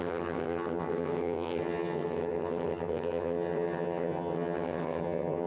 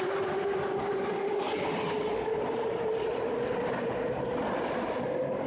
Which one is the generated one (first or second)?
first